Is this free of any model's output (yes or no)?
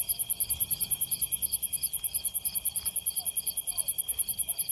yes